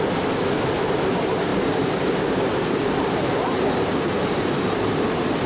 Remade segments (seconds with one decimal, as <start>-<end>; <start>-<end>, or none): none